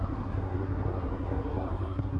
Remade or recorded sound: remade